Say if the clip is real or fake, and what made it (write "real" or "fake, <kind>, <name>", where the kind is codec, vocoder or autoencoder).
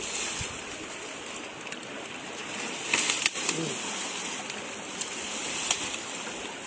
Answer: real